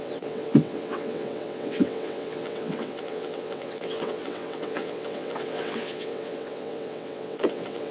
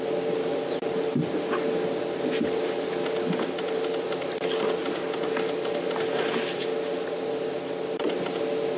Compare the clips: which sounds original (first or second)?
second